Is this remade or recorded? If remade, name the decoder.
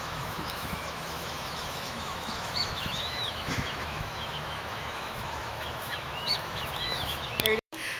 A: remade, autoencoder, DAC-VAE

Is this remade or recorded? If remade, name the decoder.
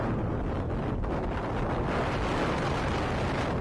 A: recorded